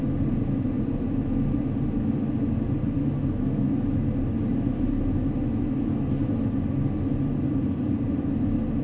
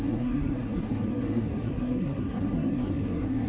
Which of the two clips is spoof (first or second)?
second